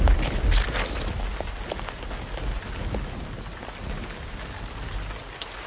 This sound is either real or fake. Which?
real